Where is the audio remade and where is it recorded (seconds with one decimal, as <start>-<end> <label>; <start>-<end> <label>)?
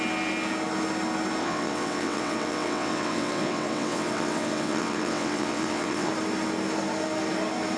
0.0-1.4 recorded; 1.4-6.1 remade; 6.1-7.8 recorded